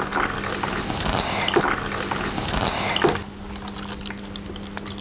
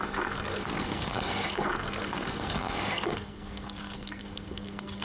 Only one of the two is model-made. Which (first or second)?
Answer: second